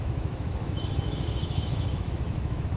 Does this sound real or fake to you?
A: fake